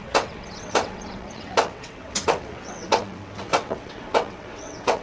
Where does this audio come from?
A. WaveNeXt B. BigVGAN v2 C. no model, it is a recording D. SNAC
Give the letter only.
A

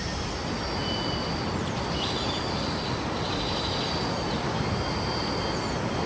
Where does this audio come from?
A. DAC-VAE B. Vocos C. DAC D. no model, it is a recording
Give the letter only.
D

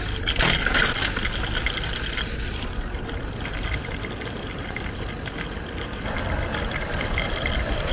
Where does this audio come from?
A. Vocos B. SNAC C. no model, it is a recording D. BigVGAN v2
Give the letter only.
C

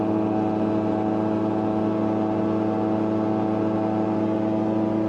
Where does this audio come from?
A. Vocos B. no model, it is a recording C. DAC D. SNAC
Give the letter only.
B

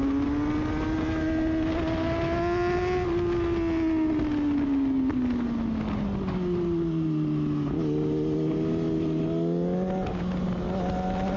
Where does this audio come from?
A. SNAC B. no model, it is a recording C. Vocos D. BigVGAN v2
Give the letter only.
B